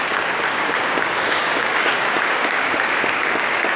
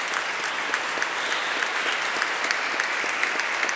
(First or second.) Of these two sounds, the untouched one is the second